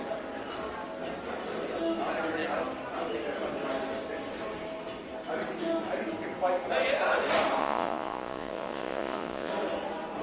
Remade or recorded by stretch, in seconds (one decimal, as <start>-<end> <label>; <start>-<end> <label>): 0.0-7.6 recorded; 7.6-9.5 remade; 9.5-10.2 recorded